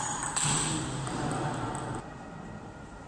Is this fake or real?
real